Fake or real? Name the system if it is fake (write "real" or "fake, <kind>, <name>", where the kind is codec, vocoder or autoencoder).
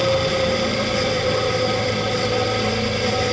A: real